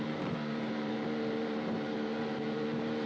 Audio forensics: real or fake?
fake